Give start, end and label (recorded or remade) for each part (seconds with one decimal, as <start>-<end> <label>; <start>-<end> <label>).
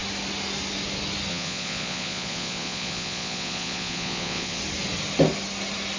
0.0-1.3 recorded; 1.3-4.6 remade; 4.6-6.0 recorded